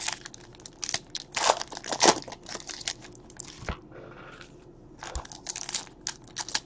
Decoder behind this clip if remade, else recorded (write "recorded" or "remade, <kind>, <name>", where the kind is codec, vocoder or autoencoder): recorded